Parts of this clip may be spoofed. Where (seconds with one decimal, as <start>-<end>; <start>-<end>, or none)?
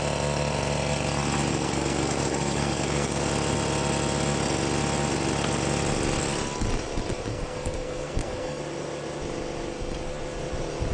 1.5-3.3; 7.3-8.6